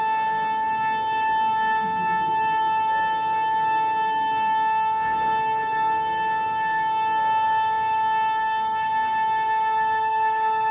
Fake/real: fake